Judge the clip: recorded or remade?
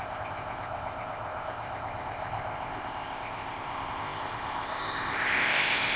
remade